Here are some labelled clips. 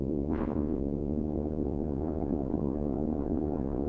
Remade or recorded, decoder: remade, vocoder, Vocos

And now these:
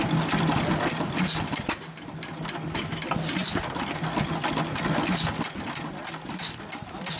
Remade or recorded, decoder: recorded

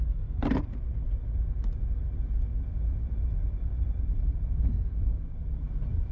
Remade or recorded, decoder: recorded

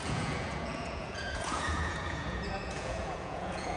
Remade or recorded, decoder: remade, vocoder, Vocos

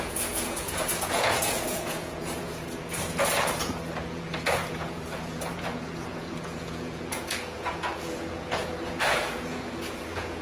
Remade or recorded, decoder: remade, vocoder, Vocos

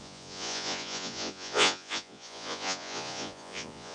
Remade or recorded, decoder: remade, vocoder, Vocos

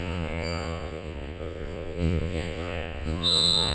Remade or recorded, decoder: remade, vocoder, Vocos